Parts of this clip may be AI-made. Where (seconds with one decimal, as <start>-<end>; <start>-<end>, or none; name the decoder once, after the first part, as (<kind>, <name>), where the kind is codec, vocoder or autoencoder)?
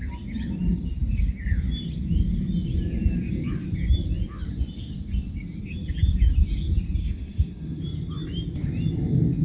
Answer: 7.0-7.8 (codec, SNAC)